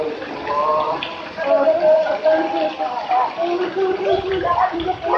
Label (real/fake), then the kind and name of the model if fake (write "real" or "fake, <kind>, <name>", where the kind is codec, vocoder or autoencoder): real